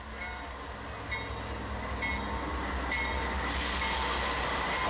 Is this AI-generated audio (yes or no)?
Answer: no